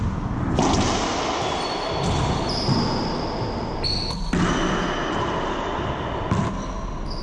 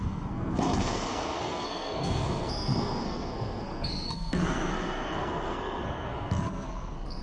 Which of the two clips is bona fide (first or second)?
first